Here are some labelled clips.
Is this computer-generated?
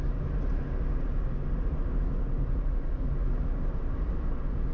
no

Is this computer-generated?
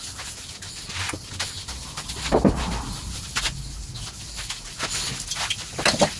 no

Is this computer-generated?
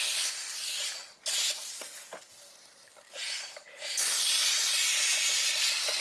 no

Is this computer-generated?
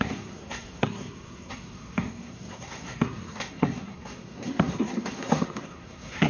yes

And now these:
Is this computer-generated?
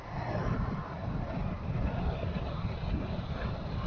no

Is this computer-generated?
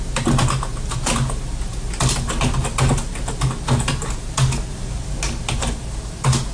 no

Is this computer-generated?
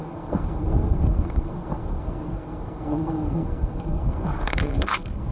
yes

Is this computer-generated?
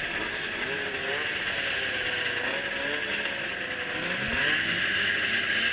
no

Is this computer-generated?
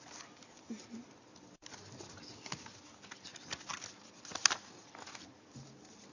no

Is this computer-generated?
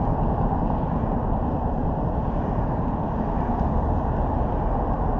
no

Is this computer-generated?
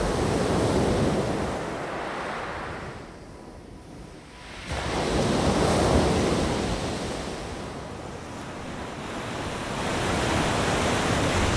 no